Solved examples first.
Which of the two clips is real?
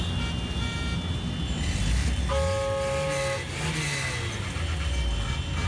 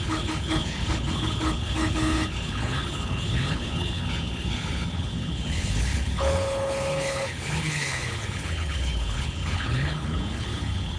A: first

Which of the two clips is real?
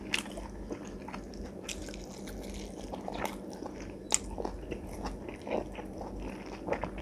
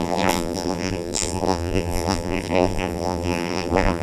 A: first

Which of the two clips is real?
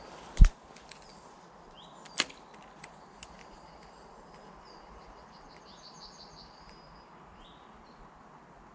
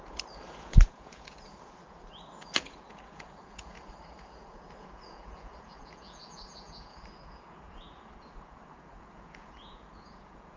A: first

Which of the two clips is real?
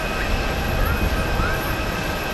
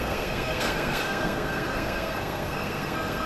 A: first